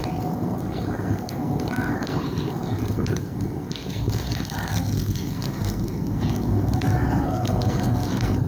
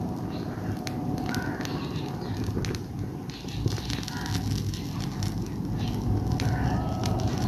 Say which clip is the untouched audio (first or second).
second